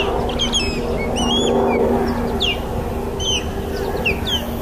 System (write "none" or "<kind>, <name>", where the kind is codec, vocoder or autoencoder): none